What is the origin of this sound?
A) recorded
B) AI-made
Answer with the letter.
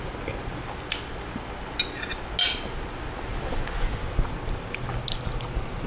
A